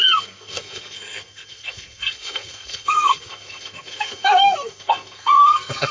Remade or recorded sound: remade